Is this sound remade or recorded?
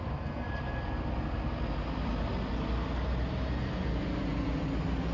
recorded